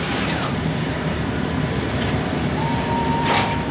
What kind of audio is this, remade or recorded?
remade